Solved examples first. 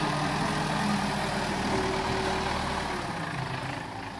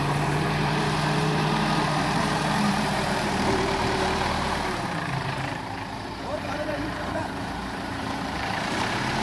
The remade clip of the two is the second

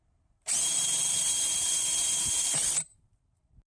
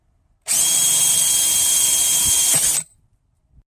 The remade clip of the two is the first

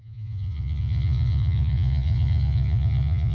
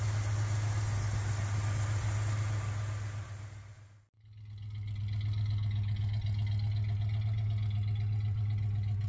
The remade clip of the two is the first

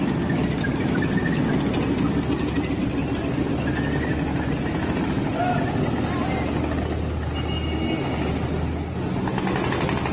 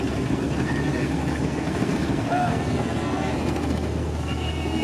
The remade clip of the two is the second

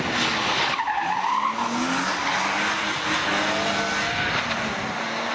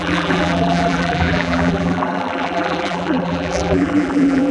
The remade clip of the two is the second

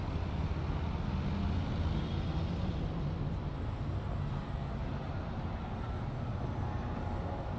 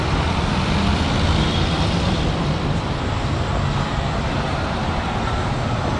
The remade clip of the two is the second